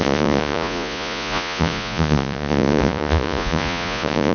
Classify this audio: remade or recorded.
remade